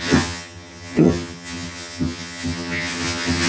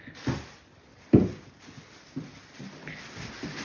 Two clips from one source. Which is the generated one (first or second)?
first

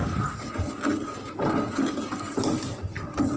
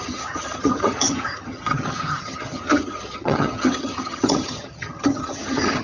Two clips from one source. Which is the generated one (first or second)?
second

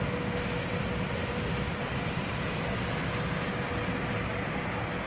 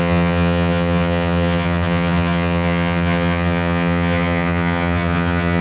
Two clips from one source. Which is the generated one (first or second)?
second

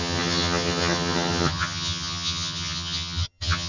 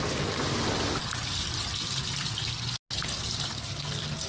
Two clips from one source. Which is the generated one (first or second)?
first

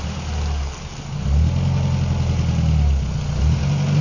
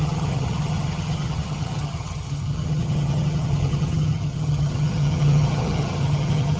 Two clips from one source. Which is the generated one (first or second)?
second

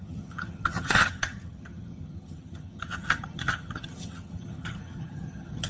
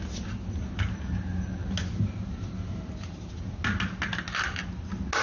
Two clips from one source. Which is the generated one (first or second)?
first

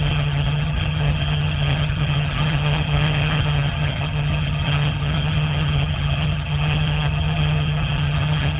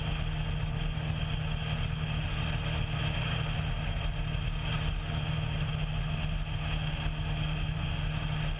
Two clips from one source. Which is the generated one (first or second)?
first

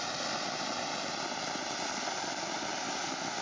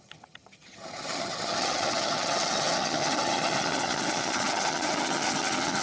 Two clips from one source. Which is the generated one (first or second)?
second